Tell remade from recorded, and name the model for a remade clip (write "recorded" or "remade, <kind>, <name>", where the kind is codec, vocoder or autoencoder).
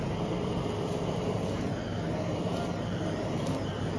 remade, vocoder, BigVGAN v2